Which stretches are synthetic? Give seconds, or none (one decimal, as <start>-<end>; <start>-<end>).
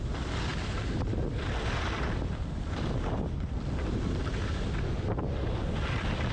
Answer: none